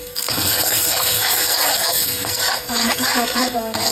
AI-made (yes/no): yes